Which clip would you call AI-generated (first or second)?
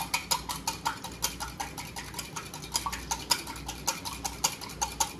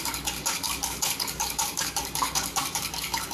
second